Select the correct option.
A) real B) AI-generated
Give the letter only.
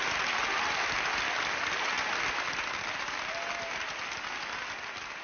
A